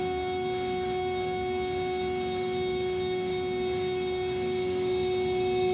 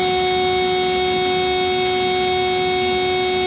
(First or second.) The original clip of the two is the second